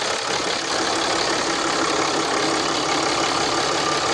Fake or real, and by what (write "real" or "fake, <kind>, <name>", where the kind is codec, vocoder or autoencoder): real